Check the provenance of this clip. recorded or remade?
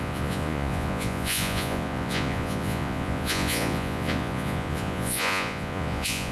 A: remade